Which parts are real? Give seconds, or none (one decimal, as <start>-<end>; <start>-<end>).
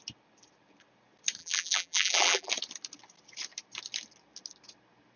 0.0-1.4; 2.5-5.2